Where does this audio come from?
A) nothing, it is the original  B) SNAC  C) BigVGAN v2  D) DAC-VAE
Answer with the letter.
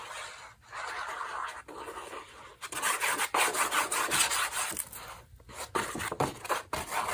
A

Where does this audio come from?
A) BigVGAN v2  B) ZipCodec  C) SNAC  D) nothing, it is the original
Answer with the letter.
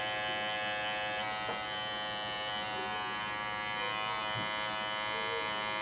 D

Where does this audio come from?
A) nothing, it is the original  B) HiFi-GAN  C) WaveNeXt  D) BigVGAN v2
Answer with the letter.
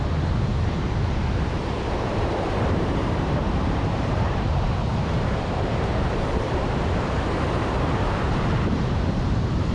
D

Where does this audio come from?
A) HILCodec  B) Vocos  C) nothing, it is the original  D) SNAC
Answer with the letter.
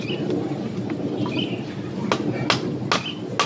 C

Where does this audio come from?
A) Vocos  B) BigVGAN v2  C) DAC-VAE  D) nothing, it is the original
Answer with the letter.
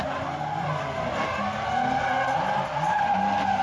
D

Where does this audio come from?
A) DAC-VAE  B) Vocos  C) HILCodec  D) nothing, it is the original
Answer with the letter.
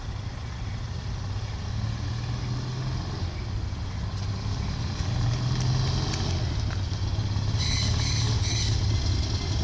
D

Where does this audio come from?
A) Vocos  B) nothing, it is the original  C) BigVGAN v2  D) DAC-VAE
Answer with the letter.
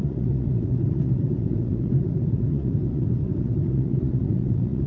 A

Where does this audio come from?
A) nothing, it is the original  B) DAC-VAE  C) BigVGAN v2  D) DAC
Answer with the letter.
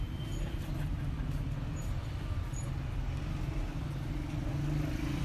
A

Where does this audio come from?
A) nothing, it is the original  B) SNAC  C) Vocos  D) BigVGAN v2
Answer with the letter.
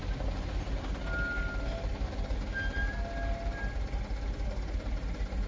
A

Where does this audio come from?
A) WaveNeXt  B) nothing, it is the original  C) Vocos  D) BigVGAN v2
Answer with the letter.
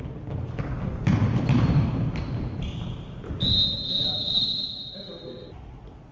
B